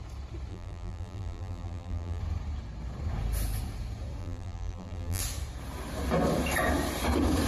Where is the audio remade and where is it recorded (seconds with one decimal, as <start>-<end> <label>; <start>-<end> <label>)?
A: 0.0-0.5 recorded; 0.5-2.2 remade; 2.2-4.2 recorded; 4.2-5.2 remade; 5.2-7.5 recorded